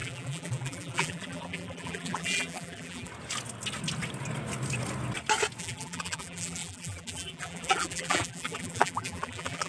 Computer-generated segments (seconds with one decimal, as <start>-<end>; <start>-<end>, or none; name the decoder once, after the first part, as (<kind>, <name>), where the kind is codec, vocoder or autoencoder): 0.0-3.1 (vocoder, BigVGAN v2); 5.6-9.7